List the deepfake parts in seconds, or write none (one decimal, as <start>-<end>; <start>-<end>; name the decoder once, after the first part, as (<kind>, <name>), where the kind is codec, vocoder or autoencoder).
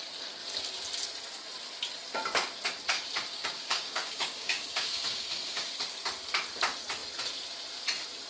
3.3-5.7 (codec, DAC)